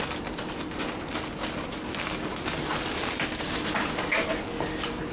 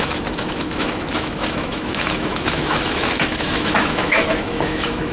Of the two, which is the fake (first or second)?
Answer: second